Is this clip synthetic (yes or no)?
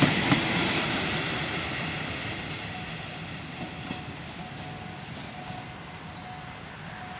no